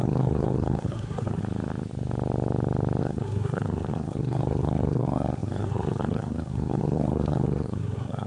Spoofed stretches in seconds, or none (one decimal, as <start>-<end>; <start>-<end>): 0.0-1.4; 3.0-8.3